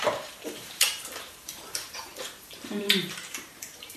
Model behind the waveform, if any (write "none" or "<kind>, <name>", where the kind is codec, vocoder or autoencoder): vocoder, BigVGAN v2